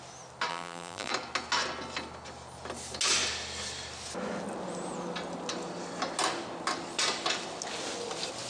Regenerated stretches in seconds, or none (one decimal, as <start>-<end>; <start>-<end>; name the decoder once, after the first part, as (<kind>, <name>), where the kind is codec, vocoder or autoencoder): 0.5-1.1 (vocoder, BigVGAN v2)